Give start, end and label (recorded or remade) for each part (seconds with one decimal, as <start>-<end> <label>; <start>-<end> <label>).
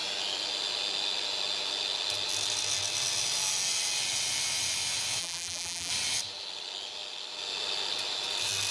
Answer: 0.0-5.2 recorded; 5.2-5.9 remade; 5.9-8.7 recorded